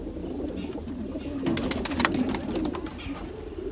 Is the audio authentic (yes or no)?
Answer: yes